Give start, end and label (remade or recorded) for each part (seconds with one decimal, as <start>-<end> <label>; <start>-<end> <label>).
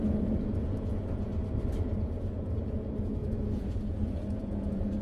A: 0.0-1.3 remade; 1.3-1.8 recorded; 1.8-5.0 remade